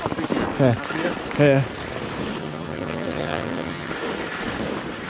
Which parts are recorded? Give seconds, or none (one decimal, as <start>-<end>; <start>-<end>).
0.0-2.4; 3.9-5.1